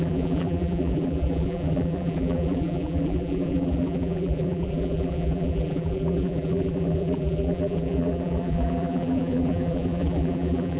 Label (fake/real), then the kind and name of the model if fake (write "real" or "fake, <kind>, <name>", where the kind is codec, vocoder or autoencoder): fake, vocoder, BigVGAN v2